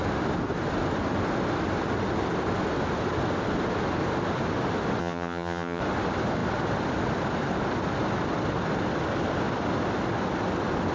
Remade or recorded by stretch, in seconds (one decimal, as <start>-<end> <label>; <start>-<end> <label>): 0.0-5.0 recorded; 5.0-5.8 remade; 5.8-10.9 recorded